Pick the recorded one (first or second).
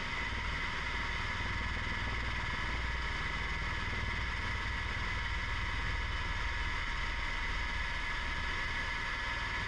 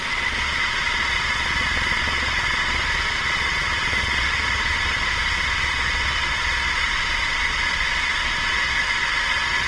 first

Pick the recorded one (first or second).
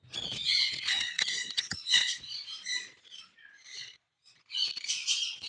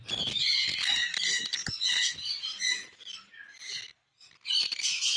second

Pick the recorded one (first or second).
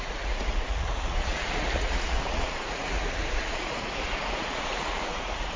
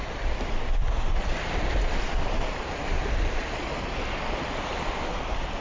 second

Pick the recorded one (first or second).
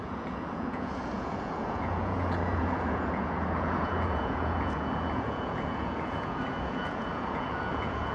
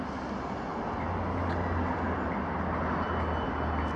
second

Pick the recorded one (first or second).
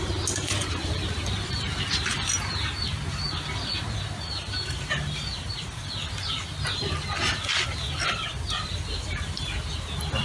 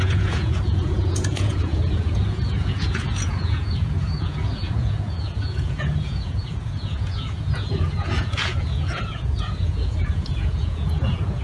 first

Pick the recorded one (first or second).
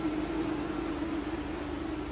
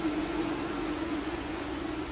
first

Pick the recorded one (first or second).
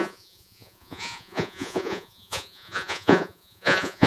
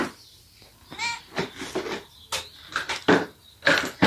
second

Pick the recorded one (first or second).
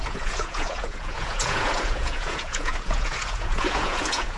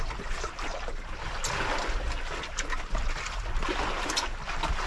second